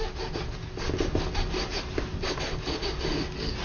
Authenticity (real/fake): real